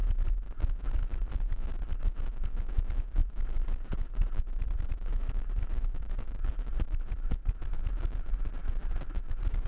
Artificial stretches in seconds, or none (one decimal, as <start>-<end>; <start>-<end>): 3.2-7.6